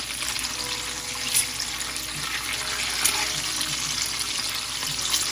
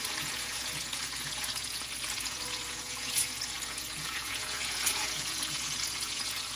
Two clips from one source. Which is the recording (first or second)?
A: first